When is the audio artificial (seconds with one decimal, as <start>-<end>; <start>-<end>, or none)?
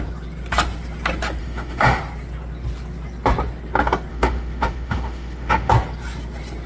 1.4-2.0; 4.1-5.7